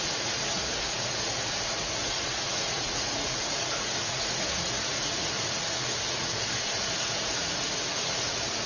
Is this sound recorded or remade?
remade